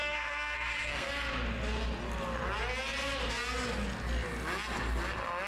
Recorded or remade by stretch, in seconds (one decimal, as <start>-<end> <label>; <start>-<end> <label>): 0.0-1.1 remade; 1.1-5.5 recorded